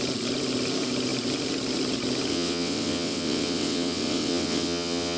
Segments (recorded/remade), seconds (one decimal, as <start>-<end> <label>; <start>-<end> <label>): 0.0-2.3 recorded; 2.3-5.2 remade